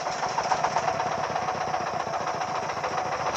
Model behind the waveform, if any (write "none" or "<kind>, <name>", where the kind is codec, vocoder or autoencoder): none